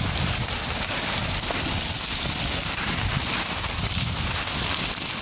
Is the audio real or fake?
real